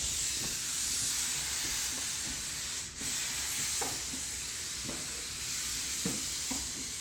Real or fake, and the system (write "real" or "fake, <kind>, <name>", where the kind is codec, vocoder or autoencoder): real